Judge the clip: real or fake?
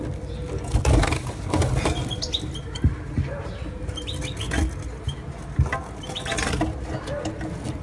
real